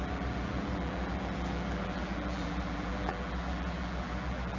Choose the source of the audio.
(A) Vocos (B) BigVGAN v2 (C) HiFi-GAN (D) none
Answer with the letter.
B